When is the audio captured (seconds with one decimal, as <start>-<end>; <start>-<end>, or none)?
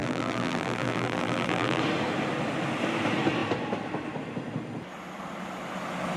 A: 1.8-6.2